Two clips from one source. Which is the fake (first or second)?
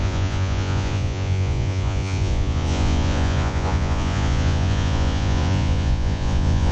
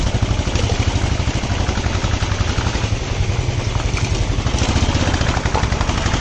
first